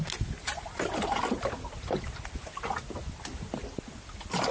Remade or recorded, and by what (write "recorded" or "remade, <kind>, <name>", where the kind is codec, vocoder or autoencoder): recorded